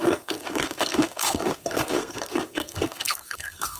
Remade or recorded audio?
remade